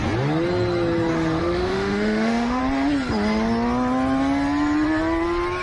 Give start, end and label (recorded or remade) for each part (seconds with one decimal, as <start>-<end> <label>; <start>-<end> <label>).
0.0-1.4 recorded; 1.4-2.6 remade; 2.6-5.6 recorded